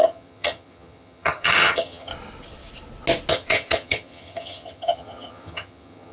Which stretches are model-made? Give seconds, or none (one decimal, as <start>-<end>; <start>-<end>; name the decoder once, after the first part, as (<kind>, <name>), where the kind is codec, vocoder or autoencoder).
0.0-2.1 (vocoder, HiFi-GAN); 3.3-6.1